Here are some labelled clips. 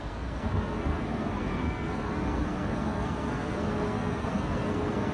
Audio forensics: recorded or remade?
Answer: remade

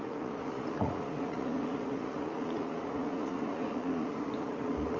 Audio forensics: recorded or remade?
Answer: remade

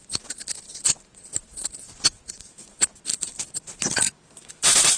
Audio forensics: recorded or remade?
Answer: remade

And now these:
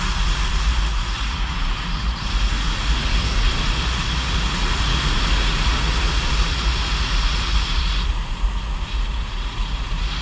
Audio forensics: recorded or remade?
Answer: remade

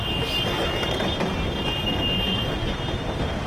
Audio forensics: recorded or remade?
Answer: recorded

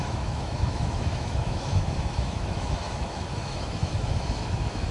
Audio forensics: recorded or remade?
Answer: remade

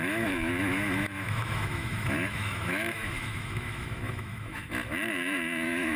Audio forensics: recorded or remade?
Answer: remade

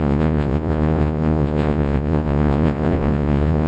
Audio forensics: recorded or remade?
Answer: remade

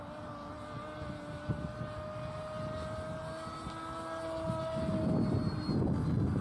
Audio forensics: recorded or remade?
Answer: recorded